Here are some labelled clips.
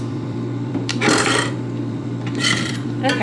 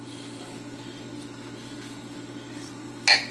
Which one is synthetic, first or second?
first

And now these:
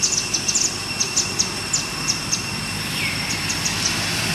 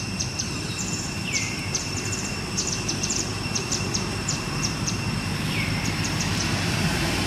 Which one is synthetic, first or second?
second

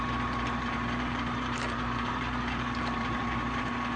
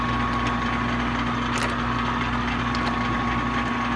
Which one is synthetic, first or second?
first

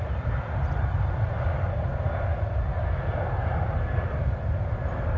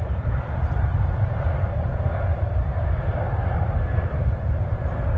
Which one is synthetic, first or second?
second